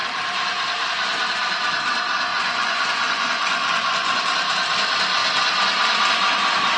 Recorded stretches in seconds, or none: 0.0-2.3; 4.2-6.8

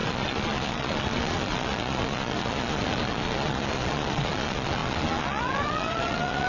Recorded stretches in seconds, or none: none

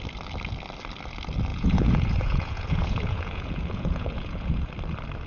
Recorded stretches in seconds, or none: 0.0-1.5; 4.7-5.3

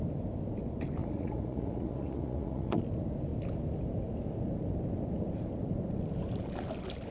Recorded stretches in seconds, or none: 0.0-1.0; 2.8-7.1

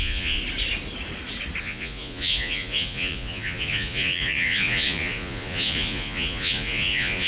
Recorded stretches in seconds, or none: 0.4-1.6

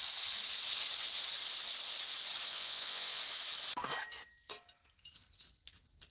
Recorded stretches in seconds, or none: 0.0-2.5; 3.2-6.1